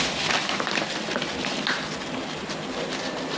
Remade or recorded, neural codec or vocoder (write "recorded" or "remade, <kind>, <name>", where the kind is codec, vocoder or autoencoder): recorded